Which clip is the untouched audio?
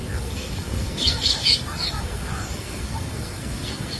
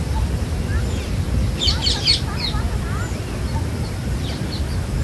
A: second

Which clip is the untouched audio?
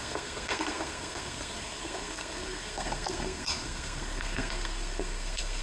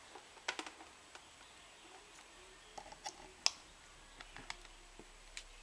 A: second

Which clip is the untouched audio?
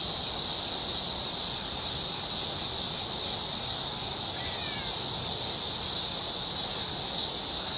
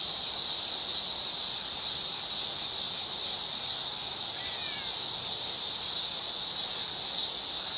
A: second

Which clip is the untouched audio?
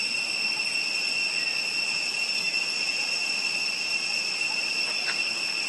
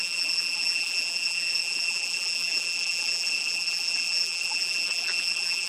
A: first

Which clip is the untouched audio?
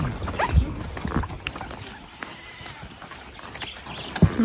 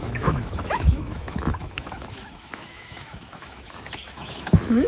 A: first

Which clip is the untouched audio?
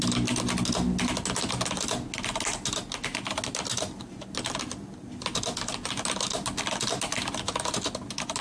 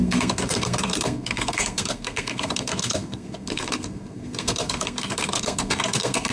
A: first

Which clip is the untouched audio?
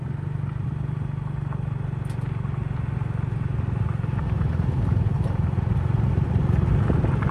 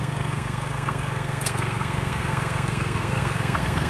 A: first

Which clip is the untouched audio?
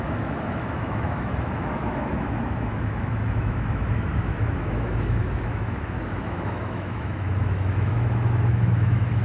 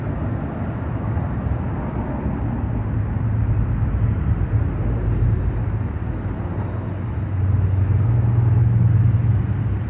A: second